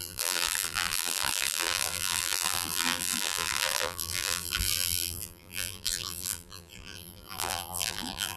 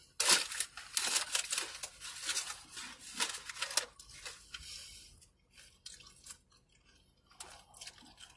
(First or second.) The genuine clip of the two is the second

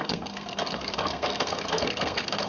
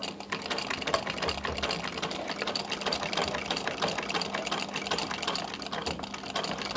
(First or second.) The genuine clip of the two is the second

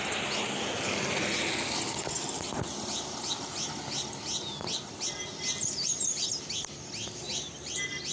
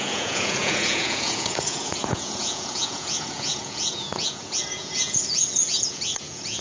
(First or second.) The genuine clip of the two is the first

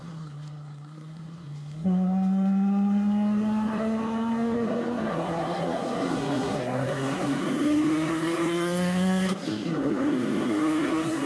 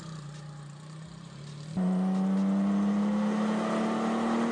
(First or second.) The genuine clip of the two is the second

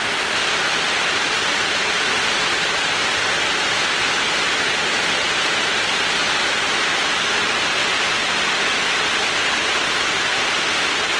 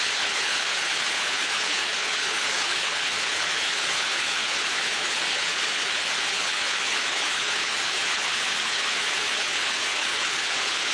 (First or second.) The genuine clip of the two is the first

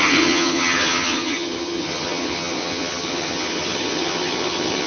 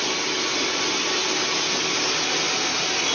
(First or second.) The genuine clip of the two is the second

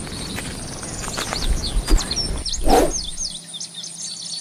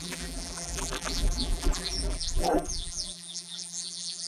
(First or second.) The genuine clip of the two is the first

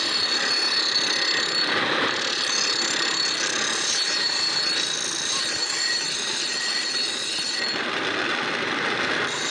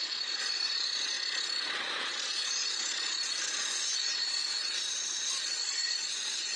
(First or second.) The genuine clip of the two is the first